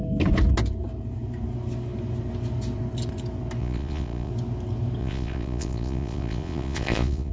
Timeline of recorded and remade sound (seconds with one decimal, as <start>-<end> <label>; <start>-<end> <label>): 0.0-3.6 recorded; 3.6-4.3 remade; 4.3-5.0 recorded; 5.0-7.3 remade